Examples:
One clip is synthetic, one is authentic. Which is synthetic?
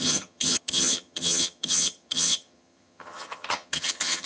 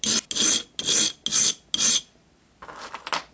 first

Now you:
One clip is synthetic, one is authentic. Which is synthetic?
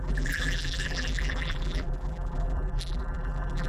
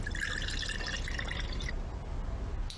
first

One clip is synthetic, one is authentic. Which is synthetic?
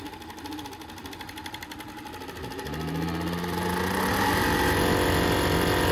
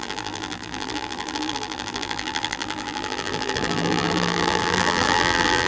second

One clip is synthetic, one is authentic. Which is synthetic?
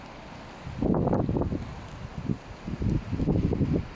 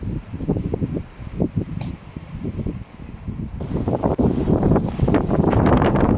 second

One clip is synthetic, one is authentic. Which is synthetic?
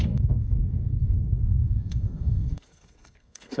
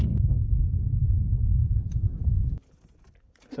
first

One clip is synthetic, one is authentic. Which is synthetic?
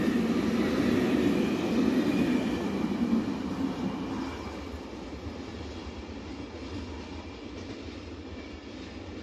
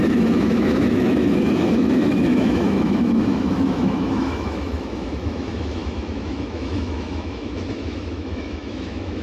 second